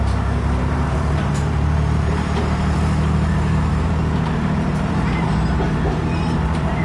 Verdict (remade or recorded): remade